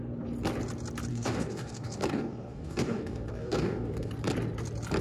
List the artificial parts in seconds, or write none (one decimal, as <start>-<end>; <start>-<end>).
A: 1.1-4.1